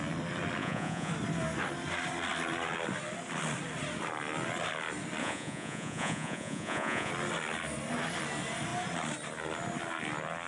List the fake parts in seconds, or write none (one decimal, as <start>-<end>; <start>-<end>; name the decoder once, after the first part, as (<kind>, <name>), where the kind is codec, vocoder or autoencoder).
0.6-1.1 (vocoder, Vocos); 5.2-7.1